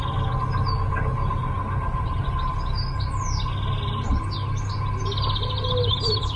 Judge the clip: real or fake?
real